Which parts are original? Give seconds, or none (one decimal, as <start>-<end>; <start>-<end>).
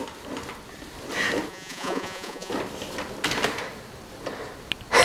0.0-1.5; 2.5-5.0